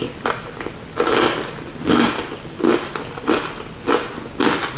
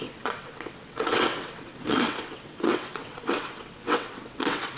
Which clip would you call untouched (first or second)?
first